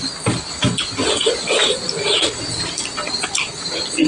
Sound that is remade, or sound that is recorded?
recorded